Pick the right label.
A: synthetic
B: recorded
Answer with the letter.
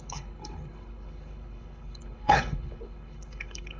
A